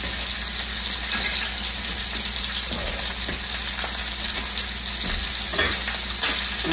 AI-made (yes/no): no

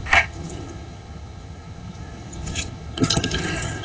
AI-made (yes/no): yes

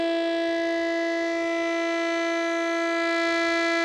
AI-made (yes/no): no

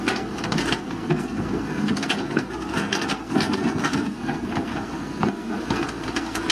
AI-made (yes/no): yes